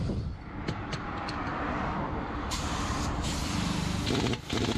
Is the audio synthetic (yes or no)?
yes